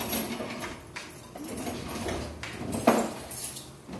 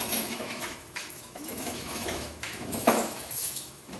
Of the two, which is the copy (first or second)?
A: second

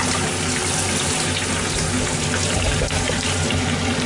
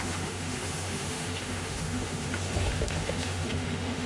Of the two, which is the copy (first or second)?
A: second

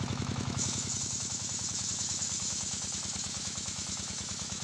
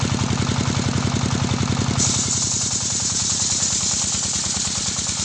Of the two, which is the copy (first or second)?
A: first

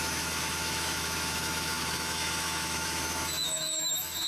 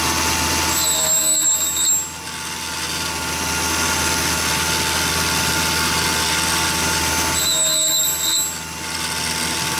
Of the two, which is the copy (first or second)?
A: first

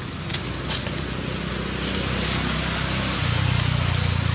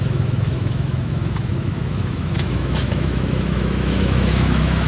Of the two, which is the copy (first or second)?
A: second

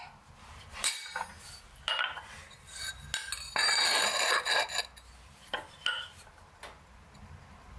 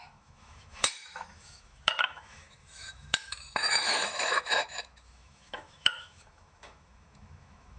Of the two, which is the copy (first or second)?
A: second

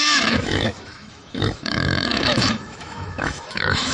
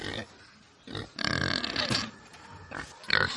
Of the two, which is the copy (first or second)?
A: first